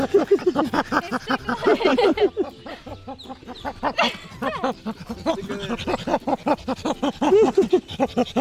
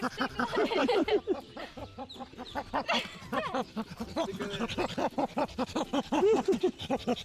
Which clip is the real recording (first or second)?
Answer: first